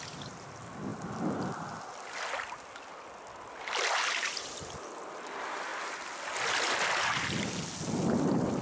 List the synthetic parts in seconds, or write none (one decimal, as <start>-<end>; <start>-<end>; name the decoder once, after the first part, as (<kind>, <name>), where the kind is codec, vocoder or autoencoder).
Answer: none